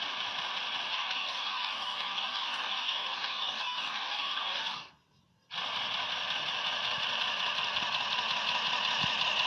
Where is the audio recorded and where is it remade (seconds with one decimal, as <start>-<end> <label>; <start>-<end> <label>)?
0.0-0.9 recorded; 0.9-4.9 remade; 4.9-9.5 recorded